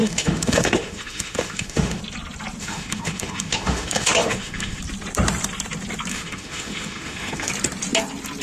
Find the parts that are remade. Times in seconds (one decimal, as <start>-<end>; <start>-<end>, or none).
0.0-2.0; 2.6-4.8; 6.1-7.5